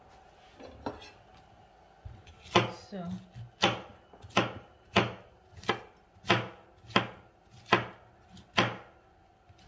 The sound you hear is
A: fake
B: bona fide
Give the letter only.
B